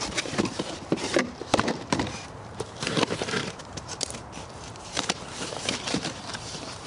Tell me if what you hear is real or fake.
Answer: fake